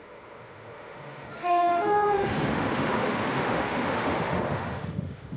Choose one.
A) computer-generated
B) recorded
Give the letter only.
A